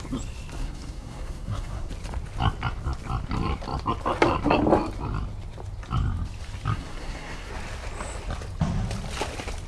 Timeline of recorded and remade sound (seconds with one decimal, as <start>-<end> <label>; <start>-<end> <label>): 0.0-0.6 recorded; 0.6-1.9 remade; 1.9-6.7 recorded; 6.7-7.5 remade; 7.5-9.7 recorded